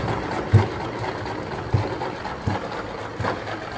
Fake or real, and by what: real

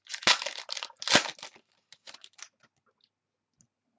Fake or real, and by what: real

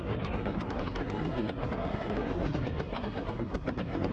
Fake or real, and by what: fake, codec, SNAC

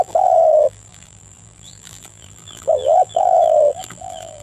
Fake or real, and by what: fake, vocoder, BigVGAN v2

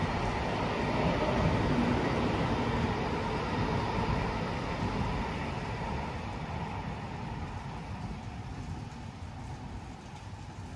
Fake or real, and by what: real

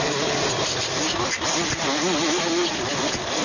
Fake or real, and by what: real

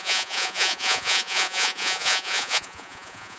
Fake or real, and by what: fake, vocoder, Vocos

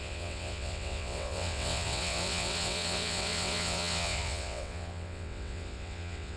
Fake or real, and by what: fake, vocoder, WaveNeXt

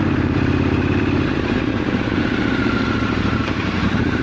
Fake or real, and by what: fake, vocoder, BigVGAN v2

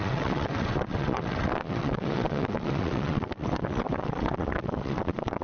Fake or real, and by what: fake, vocoder, WaveNeXt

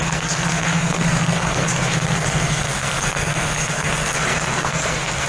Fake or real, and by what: fake, codec, SNAC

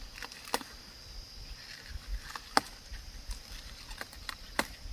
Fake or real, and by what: real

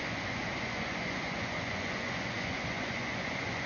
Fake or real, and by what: fake, vocoder, Vocos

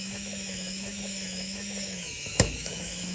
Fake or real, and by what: fake, autoencoder, DAC-VAE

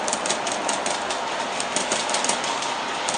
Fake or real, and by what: real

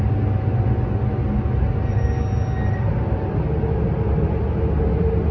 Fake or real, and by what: real